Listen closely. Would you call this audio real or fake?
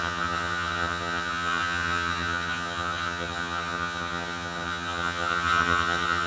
fake